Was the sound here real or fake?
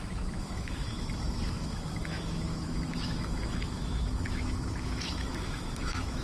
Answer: fake